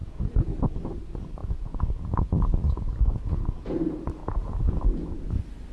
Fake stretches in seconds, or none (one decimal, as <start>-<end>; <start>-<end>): 0.0-0.8; 1.4-3.8; 4.2-5.3